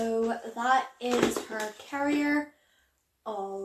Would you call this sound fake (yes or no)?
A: no